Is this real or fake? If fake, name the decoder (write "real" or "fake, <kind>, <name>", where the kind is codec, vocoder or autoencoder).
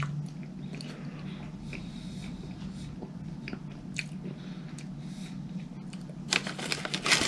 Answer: real